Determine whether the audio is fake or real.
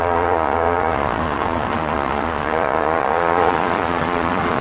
fake